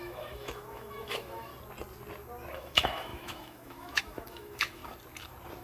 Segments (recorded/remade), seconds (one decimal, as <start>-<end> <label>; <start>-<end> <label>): 0.0-1.5 remade; 1.5-2.5 recorded; 2.5-4.8 remade; 4.8-5.6 recorded